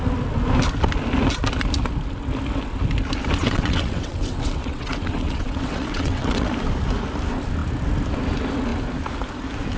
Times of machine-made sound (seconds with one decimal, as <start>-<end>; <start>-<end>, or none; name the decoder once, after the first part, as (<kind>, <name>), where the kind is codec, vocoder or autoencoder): 3.4-6.5 (vocoder, WaveNeXt)